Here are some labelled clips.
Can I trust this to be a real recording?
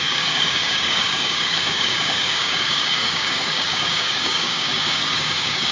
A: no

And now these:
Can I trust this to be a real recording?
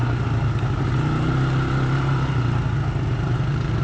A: yes